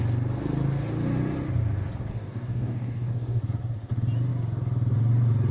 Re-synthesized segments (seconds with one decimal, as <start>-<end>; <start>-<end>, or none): 2.1-3.4